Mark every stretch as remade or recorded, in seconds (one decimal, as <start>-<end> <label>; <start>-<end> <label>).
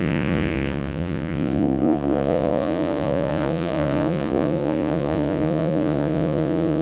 0.0-6.8 remade